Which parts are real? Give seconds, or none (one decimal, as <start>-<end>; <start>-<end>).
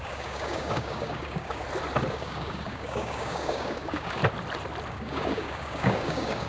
1.6-2.1; 4.2-4.9